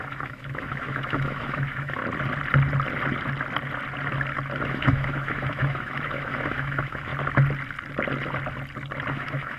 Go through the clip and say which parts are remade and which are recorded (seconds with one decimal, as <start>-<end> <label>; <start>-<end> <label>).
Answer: 0.0-2.0 remade; 2.0-4.7 recorded; 4.7-7.1 remade; 7.1-9.1 recorded; 9.1-9.6 remade